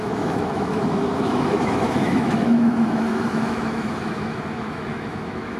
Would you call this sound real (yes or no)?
no